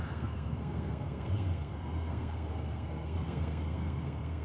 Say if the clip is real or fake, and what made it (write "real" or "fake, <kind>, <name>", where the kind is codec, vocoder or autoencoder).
fake, codec, SNAC